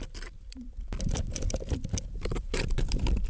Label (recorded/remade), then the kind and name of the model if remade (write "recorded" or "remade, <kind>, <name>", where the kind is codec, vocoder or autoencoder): remade, vocoder, BigVGAN v2